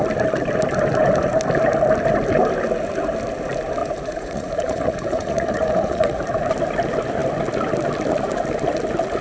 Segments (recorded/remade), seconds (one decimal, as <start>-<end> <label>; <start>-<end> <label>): 0.0-3.8 recorded; 3.8-6.2 remade; 6.2-9.2 recorded